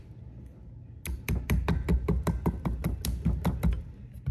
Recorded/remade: recorded